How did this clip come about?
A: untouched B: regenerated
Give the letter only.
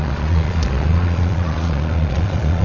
B